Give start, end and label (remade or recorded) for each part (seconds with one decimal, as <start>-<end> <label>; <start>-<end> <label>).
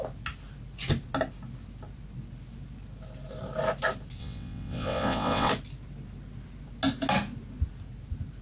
0.0-4.2 recorded; 4.2-5.5 remade; 5.5-8.4 recorded